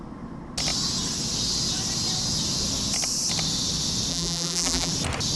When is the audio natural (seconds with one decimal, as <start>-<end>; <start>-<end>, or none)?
0.0-4.1; 4.9-5.4